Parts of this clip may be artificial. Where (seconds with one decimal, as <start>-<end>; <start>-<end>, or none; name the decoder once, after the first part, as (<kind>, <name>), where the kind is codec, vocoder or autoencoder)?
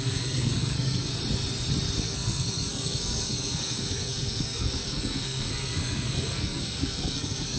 0.0-1.1 (codec, SNAC); 2.0-7.6